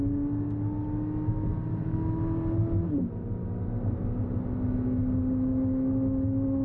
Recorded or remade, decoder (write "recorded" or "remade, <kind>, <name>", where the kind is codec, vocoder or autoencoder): recorded